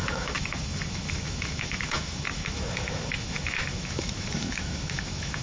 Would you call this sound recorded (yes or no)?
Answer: no